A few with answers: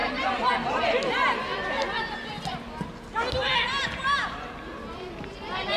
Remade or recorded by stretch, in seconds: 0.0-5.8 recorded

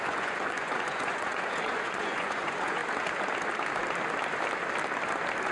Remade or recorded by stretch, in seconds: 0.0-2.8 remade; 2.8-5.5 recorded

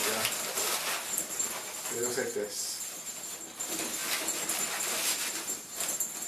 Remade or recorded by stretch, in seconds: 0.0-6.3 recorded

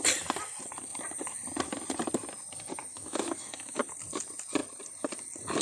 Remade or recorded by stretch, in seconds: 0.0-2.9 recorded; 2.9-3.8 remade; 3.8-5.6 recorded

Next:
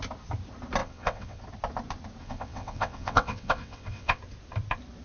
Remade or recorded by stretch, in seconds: 0.0-0.8 recorded; 0.8-1.4 remade; 1.4-2.2 recorded; 2.2-4.2 remade; 4.2-5.0 recorded

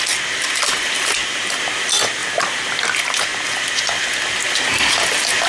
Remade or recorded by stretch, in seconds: 0.0-5.5 recorded

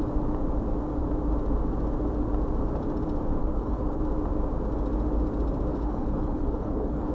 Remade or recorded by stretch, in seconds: 0.0-3.4 recorded; 3.4-4.0 remade; 4.0-5.7 recorded; 5.7-7.1 remade

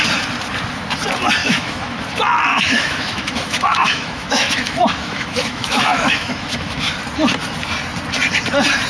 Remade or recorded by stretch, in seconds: 0.0-1.4 recorded; 1.4-2.0 remade; 2.0-2.5 recorded; 2.5-6.9 remade; 6.9-8.9 recorded